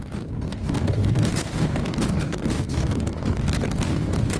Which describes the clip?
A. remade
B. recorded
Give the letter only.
A